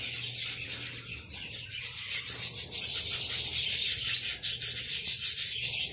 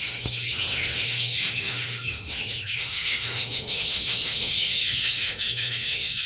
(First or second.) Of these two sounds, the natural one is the first